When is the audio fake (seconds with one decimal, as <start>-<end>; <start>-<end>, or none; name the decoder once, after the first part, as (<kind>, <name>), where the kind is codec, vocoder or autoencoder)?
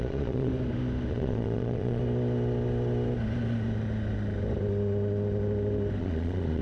0.0-0.5 (vocoder, Vocos); 1.1-2.0; 6.0-6.6